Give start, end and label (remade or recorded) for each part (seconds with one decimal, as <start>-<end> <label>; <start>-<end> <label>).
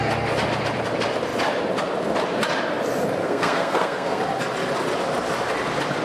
0.0-3.2 recorded; 3.2-4.2 remade; 4.2-6.0 recorded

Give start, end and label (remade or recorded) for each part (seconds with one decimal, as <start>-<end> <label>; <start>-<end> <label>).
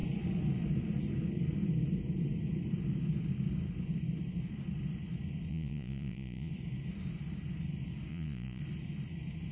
0.0-5.5 recorded; 5.5-6.5 remade; 6.5-8.1 recorded; 8.1-8.6 remade; 8.6-9.5 recorded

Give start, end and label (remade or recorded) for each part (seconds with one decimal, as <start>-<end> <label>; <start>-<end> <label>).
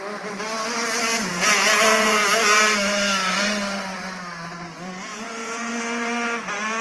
0.0-1.3 recorded; 1.3-2.6 remade; 2.6-5.1 recorded; 5.1-5.7 remade; 5.7-6.8 recorded